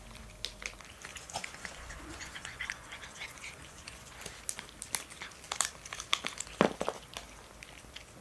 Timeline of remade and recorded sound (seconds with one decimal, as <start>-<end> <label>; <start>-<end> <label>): 0.0-1.1 recorded; 1.1-4.2 remade; 4.2-8.2 recorded